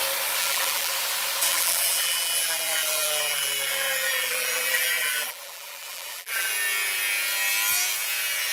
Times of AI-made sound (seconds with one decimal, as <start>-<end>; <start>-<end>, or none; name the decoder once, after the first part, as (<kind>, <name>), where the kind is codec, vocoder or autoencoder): 0.4-0.9 (vocoder, BigVGAN v2); 1.5-6.5